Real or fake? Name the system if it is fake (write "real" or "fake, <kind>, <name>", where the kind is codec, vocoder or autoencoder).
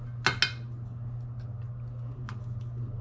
real